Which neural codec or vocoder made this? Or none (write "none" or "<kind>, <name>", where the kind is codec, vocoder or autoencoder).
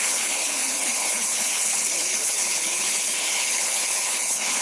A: codec, HILCodec